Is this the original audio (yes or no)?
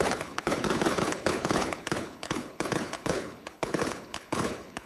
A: no